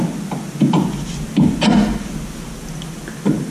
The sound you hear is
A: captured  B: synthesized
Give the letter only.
A